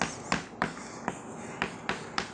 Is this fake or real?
real